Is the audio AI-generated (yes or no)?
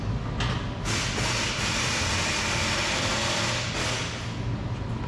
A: no